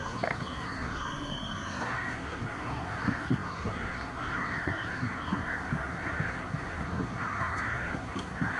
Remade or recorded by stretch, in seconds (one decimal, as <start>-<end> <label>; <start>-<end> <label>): 0.0-8.6 remade